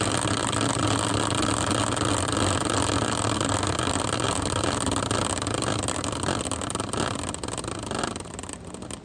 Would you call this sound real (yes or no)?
yes